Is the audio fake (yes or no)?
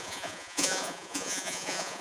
yes